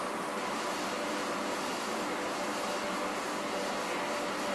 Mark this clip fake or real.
real